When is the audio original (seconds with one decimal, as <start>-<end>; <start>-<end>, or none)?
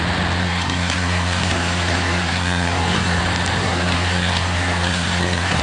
0.0-0.4; 3.2-3.6